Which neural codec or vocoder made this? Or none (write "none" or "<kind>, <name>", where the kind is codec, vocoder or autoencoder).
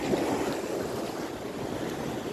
none